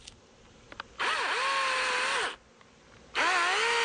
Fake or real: real